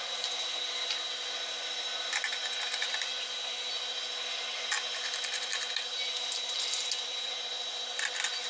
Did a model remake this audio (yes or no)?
no